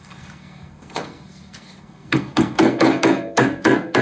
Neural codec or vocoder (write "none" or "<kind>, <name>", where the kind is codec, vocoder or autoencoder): codec, SNAC